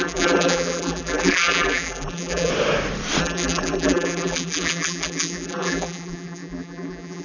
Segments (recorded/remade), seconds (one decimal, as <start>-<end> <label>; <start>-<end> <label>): 0.0-2.5 remade; 2.5-3.2 recorded; 3.2-7.2 remade